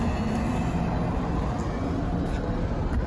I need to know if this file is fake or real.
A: real